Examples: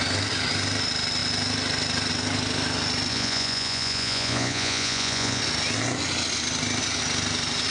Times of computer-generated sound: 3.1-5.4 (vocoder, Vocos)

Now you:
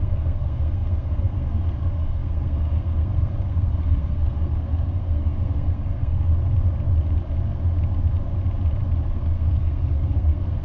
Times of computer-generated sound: 0.0-6.3 (codec, SNAC); 9.1-10.6

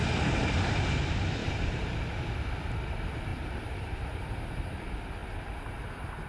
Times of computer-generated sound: 1.4-2.0 (vocoder, BigVGAN v2); 3.3-4.2

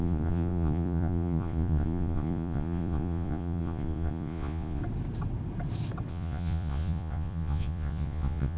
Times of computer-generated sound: 0.0-4.8 (vocoder, Vocos); 6.1-8.6

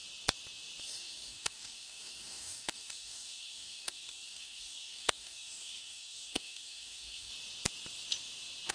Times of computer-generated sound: 0.8-7.3 (codec, DAC)

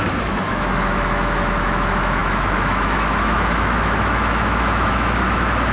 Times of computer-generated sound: 0.0-5.7 (autoencoder, DAC-VAE)

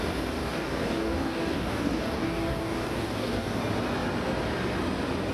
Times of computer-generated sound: 0.4-3.6 (codec, DAC)

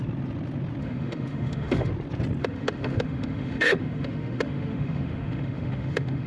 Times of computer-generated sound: 0.8-1.9 (autoencoder, DAC-VAE); 2.4-6.3